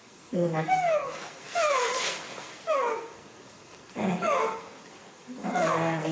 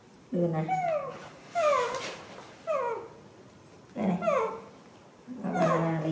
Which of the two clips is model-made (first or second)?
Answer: first